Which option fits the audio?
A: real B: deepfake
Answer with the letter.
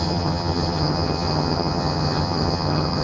B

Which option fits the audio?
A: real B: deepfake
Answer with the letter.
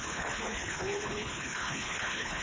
B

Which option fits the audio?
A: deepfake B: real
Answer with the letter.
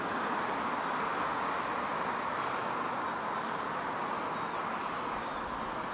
B